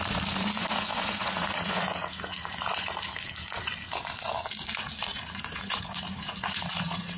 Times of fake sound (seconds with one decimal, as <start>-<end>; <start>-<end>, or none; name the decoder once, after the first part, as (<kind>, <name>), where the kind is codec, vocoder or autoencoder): 0.0-3.1 (vocoder, Vocos); 4.9-7.2